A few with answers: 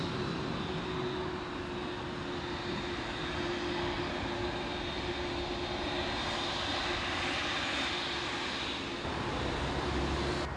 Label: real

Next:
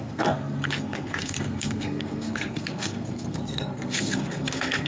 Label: fake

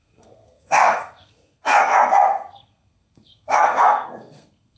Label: fake